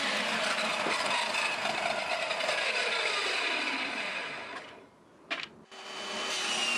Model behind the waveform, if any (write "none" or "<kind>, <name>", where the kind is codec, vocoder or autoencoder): none